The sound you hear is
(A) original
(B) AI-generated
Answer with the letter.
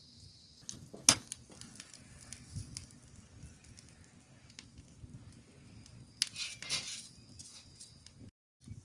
A